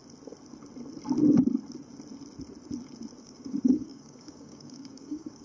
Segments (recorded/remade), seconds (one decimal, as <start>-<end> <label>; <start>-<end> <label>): 0.0-3.2 recorded; 3.2-5.4 remade